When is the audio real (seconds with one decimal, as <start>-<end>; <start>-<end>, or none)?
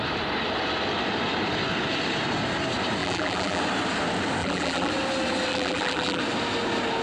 0.0-3.0; 3.6-4.4; 4.9-5.5; 6.2-7.0